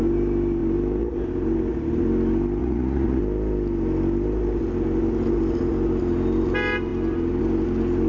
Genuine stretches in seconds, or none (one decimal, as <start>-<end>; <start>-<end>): 0.0-2.6; 3.2-8.1